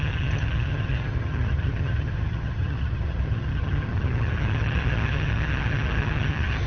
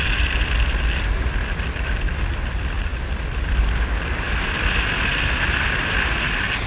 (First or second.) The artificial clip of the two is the first